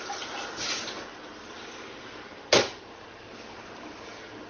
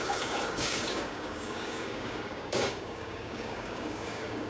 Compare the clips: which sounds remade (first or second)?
second